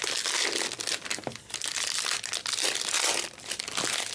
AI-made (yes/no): no